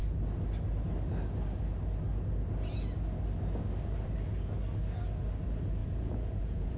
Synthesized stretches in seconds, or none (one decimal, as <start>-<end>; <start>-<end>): 5.8-6.8